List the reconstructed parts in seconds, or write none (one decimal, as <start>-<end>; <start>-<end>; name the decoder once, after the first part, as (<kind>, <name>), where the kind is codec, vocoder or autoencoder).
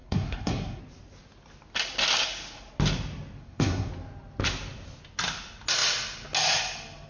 0.0-0.8 (codec, SNAC); 3.4-3.9